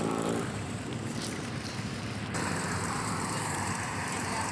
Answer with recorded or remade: remade